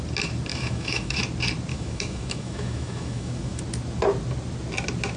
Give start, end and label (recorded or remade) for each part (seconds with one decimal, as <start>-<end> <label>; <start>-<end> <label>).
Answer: 0.0-0.5 recorded; 0.5-1.2 remade; 1.2-1.7 recorded; 1.7-3.6 remade; 3.6-5.2 recorded